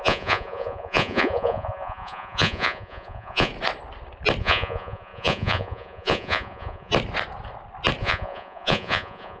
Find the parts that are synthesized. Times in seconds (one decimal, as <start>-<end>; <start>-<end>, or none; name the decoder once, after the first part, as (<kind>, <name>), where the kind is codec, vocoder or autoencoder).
0.0-3.5 (vocoder, Vocos); 4.4-6.9; 8.0-9.4